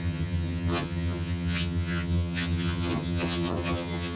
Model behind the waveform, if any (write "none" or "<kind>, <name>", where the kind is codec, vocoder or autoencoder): vocoder, HiFi-GAN